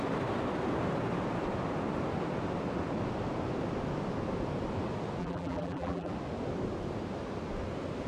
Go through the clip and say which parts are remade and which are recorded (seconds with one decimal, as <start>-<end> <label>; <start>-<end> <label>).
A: 0.0-5.2 recorded; 5.2-6.1 remade; 6.1-8.1 recorded